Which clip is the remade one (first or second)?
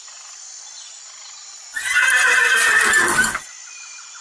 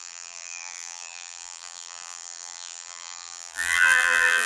second